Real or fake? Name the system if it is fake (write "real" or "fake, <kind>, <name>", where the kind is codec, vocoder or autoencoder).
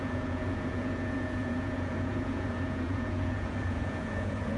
fake, vocoder, Vocos